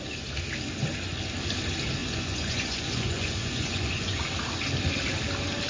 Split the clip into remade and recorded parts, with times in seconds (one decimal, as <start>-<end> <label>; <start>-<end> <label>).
0.0-2.0 recorded; 2.0-4.2 remade; 4.2-5.7 recorded